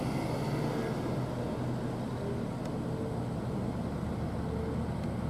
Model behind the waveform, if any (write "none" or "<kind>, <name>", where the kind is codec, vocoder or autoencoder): none